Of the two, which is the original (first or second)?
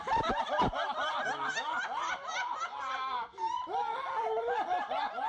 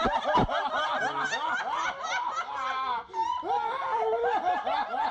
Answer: second